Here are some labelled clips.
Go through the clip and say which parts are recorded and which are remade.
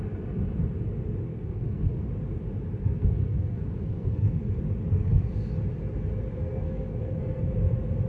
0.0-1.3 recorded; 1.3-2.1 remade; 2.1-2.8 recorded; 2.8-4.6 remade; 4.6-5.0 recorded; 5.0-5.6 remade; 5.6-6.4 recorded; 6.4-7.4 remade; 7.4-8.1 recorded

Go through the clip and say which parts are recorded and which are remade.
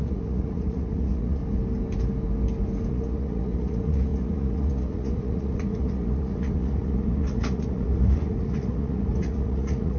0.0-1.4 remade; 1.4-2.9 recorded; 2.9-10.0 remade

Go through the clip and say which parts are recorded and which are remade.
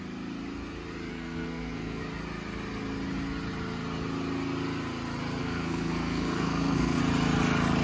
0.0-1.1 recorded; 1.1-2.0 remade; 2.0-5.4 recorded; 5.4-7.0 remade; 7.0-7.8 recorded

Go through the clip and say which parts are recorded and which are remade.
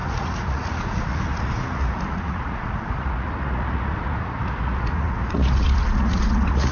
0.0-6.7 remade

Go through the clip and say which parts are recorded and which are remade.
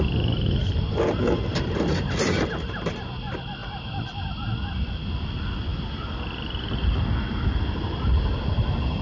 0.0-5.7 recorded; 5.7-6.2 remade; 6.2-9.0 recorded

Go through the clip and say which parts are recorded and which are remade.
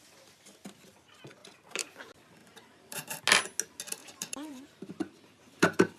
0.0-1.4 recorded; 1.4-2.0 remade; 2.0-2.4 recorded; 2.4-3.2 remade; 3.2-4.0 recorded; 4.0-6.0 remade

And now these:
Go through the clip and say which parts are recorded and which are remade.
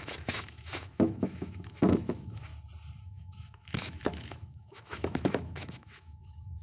0.0-2.5 remade; 2.5-3.0 recorded; 3.0-6.6 remade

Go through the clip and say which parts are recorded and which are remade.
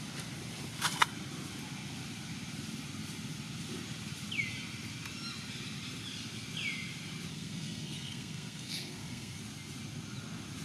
0.0-7.3 recorded; 7.3-9.4 remade; 9.4-10.6 recorded